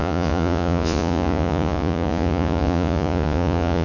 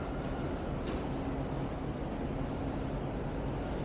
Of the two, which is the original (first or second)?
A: second